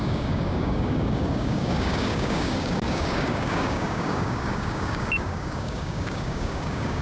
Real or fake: fake